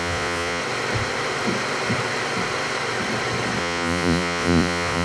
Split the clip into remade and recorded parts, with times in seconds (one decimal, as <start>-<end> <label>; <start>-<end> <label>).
0.0-0.6 remade; 0.6-3.6 recorded; 3.6-5.0 remade